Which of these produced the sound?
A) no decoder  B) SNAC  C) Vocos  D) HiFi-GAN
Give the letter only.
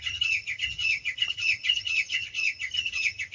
D